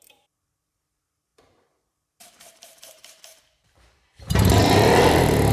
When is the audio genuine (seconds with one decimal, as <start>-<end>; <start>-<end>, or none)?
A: none